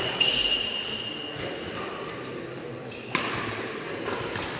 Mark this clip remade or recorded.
recorded